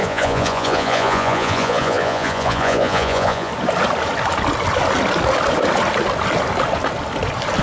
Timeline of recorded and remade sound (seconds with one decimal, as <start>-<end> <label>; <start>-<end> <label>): 0.0-3.5 remade; 3.5-7.6 recorded